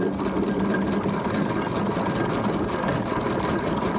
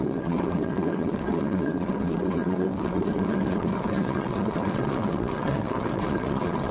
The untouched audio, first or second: first